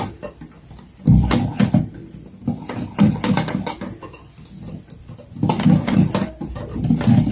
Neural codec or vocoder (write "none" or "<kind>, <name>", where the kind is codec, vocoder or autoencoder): none